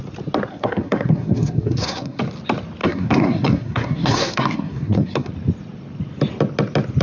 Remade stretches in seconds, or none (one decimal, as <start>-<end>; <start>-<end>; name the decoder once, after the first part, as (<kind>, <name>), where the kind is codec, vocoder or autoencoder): 0.5-2.2 (codec, SNAC); 2.8-5.3